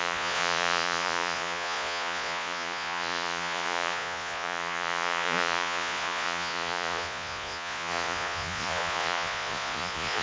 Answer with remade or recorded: remade